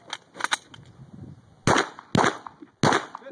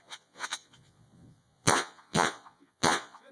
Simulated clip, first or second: second